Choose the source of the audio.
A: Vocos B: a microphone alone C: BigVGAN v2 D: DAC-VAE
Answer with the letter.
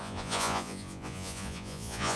A